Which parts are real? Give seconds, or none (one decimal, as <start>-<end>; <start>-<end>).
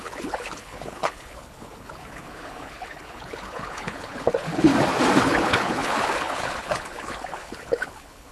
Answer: 4.7-5.2